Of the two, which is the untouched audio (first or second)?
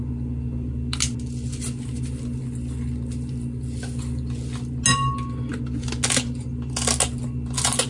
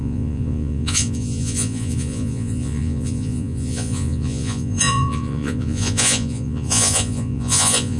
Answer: first